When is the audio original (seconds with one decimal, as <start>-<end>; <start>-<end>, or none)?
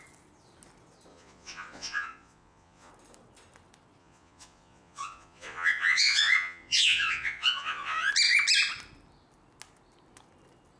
0.0-1.1; 2.9-4.0; 8.1-10.8